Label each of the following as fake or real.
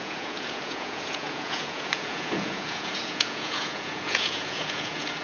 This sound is fake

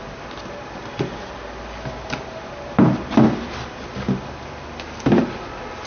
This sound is real